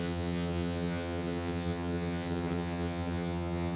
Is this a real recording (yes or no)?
no